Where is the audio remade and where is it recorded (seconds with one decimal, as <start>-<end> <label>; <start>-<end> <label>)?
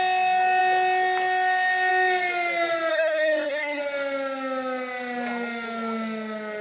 0.0-2.9 recorded; 2.9-3.8 remade; 3.8-6.6 recorded